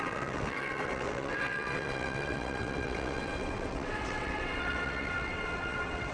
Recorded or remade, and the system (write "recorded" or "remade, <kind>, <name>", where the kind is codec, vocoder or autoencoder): remade, vocoder, WaveNeXt